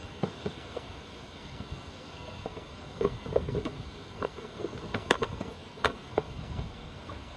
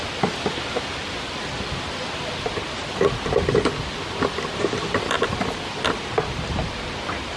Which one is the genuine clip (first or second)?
second